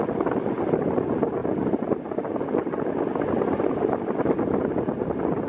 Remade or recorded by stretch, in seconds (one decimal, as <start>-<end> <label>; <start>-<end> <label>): 0.0-5.5 recorded

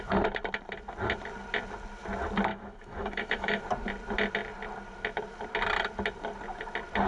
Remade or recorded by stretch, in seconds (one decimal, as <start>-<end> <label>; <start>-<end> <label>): 0.0-2.5 recorded; 2.5-3.6 remade; 3.6-7.1 recorded

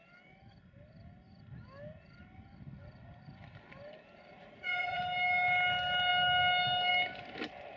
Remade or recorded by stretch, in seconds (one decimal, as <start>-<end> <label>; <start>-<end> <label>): 0.0-4.3 recorded; 4.3-5.0 remade; 5.0-7.8 recorded